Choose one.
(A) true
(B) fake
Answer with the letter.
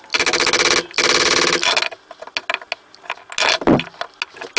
A